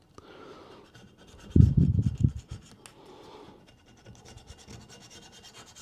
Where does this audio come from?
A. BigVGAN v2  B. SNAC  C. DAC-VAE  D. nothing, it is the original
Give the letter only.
D